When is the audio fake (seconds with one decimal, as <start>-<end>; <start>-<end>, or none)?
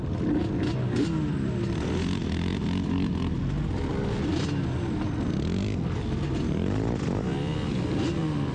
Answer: none